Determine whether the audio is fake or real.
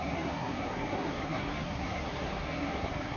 fake